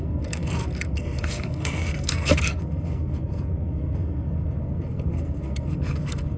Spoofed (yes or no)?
yes